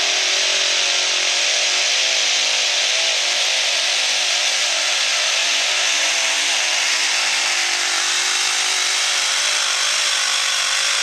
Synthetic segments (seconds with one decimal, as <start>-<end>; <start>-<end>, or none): 5.4-6.1